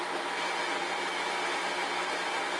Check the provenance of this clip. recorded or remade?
recorded